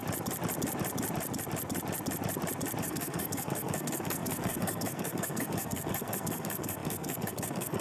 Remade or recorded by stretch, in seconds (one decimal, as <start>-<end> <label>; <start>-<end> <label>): 0.0-2.8 recorded; 2.8-7.8 remade